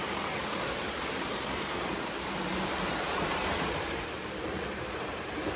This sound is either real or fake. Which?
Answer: fake